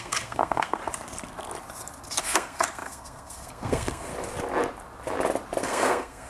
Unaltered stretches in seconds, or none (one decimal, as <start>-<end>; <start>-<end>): 0.8-2.2; 4.1-5.6